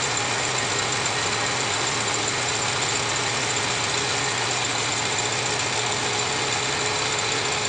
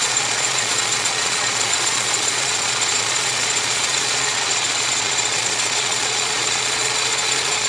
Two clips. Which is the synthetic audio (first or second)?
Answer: second